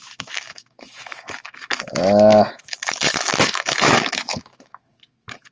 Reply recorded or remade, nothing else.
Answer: remade